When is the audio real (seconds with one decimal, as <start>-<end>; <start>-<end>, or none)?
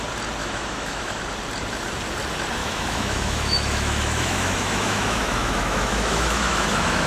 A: 0.0-0.4; 1.2-2.6